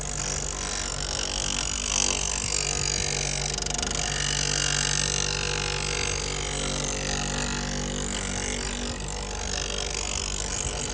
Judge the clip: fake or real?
real